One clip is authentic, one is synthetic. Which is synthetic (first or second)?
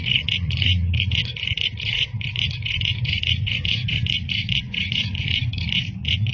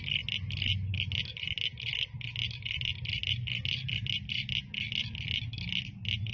first